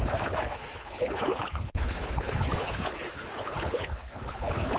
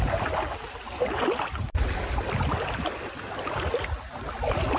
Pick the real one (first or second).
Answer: second